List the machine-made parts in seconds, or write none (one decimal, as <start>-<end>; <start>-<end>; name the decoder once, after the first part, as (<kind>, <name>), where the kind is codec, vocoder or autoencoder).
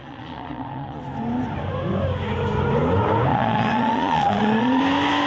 0.0-1.0 (vocoder, Vocos); 3.3-4.8